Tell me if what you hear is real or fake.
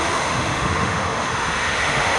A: fake